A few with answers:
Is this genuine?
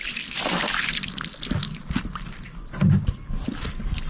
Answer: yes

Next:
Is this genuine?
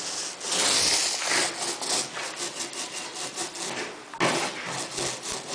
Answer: yes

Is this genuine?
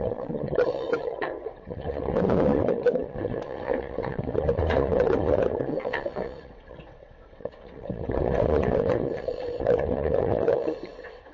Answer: no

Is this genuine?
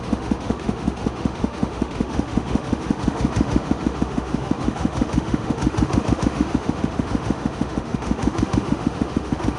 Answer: no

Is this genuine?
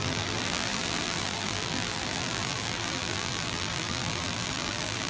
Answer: no